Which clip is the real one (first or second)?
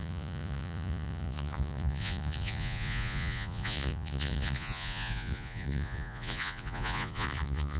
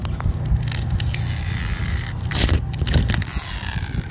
second